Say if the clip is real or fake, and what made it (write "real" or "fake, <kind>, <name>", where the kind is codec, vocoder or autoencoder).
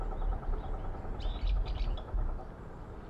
real